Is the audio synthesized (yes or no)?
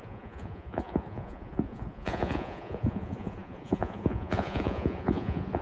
yes